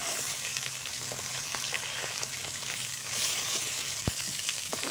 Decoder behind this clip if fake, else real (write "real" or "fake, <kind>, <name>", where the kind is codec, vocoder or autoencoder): fake, codec, DAC